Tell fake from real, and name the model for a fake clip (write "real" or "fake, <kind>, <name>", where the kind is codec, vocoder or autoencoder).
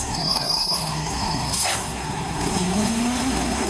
fake, codec, SNAC